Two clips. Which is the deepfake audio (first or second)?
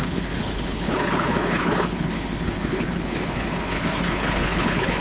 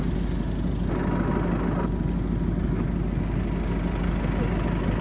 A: first